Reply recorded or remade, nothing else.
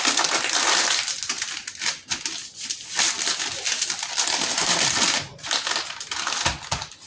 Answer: recorded